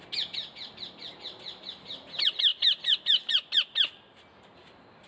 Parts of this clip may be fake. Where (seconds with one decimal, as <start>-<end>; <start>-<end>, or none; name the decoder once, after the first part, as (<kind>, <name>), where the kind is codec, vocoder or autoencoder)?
none